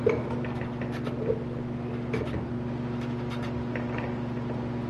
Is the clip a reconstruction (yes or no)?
no